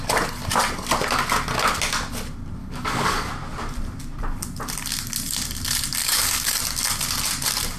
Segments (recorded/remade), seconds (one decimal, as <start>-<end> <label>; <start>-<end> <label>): 0.0-2.6 recorded; 2.6-3.3 remade; 3.3-6.0 recorded; 6.0-6.6 remade; 6.6-7.8 recorded